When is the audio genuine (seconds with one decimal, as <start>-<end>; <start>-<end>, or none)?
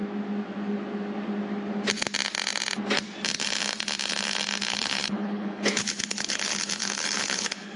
0.0-4.7